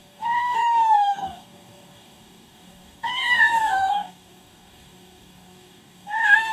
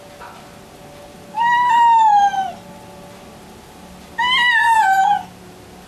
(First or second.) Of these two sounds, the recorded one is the second